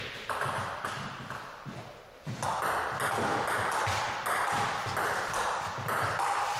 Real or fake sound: real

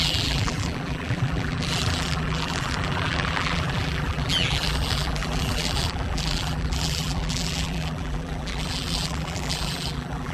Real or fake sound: fake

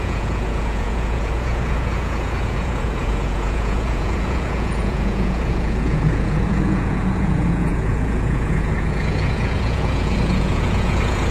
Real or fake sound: fake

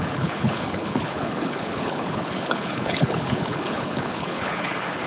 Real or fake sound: fake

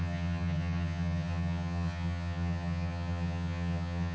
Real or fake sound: fake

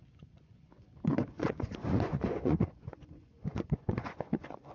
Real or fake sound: fake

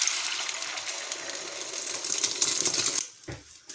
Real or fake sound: real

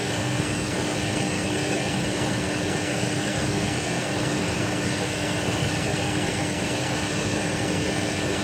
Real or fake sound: fake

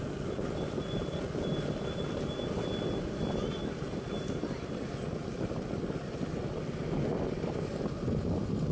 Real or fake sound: real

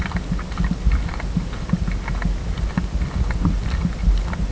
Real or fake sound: real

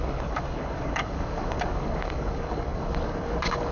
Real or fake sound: fake